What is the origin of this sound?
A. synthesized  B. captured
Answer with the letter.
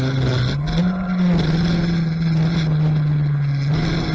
B